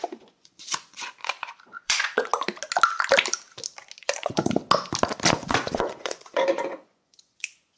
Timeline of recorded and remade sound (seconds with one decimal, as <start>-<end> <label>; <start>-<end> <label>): 0.0-2.3 remade; 2.3-4.0 recorded; 4.0-4.6 remade; 4.6-5.3 recorded; 5.3-7.8 remade